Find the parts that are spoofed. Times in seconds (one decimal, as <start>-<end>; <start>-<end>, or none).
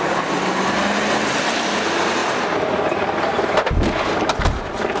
0.0-2.2; 2.8-5.0